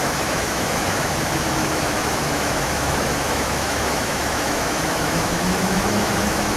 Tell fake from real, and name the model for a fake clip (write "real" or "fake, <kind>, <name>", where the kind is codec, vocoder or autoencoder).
fake, autoencoder, DAC-VAE